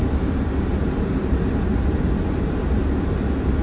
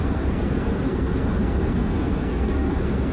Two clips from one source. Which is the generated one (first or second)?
second